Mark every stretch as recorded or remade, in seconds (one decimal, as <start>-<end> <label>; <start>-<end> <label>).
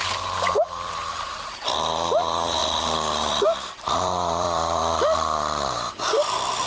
0.0-6.7 remade